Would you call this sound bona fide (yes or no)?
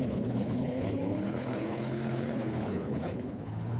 no